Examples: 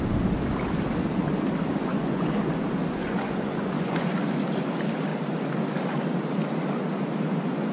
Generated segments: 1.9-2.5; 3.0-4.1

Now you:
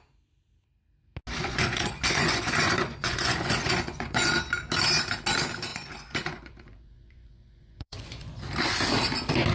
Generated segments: 1.4-4.3; 5.7-8.4

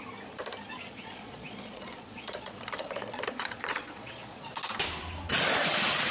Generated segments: 0.9-4.6

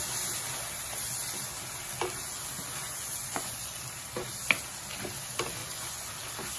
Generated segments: 2.8-3.8; 5.6-6.1

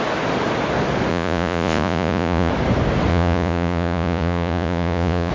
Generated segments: 1.1-2.5; 3.1-5.3